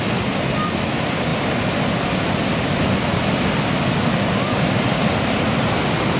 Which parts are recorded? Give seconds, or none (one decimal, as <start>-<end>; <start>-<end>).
0.0-6.2